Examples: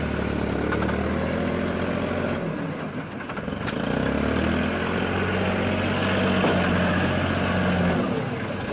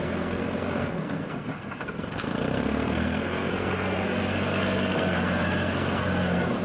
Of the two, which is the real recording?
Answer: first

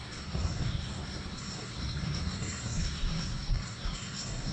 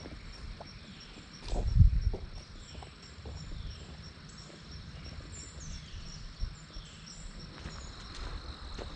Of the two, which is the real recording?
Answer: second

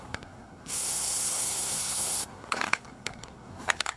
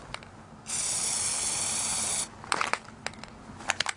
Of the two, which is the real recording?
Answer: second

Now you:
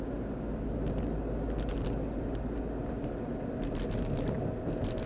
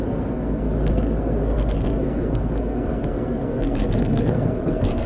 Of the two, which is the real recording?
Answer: first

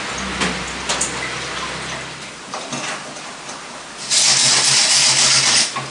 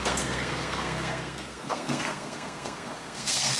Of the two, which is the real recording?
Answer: first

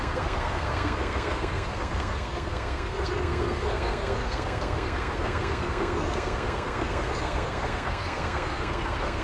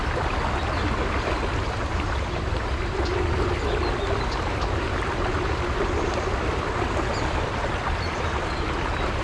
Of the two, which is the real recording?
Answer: second